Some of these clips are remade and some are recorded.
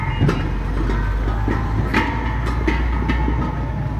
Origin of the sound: recorded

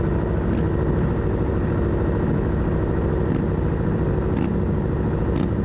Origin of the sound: recorded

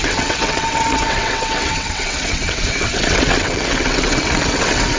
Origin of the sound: remade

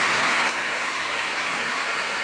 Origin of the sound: remade